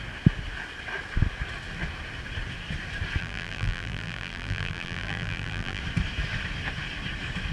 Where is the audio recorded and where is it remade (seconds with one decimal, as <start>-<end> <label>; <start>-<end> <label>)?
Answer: 0.0-3.2 recorded; 3.2-5.8 remade; 5.8-7.5 recorded